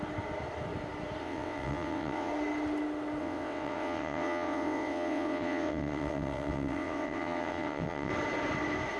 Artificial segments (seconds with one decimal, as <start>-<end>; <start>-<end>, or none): 1.2-2.3; 3.2-8.1